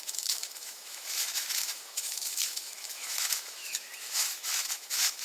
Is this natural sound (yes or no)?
no